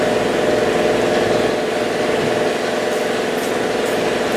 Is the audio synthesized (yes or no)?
no